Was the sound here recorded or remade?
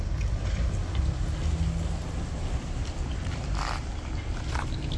remade